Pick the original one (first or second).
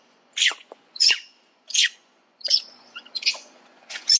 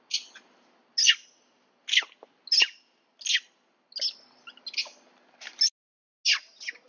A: second